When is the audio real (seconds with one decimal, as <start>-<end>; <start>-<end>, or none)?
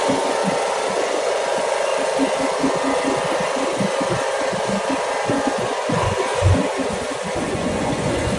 0.4-0.9; 1.9-5.3; 6.3-7.4